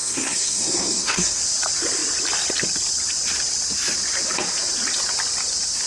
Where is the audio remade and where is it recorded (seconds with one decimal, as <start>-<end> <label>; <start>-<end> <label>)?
0.0-1.4 remade; 1.4-5.9 recorded